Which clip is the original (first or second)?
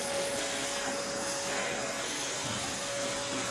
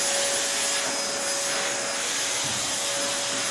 second